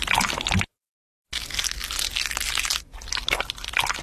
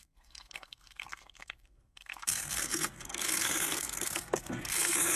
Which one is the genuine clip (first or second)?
first